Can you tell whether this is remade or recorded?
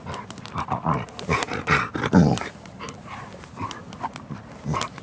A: recorded